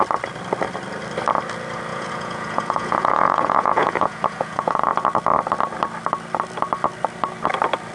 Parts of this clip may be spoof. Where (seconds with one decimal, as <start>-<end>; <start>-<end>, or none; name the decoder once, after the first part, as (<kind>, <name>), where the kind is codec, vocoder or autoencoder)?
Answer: 1.9-4.8 (vocoder, Vocos)